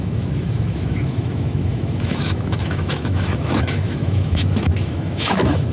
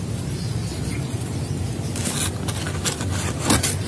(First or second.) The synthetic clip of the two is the first